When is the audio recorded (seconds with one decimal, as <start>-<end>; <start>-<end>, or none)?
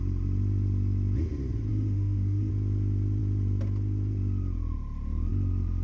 0.0-1.7; 2.5-5.8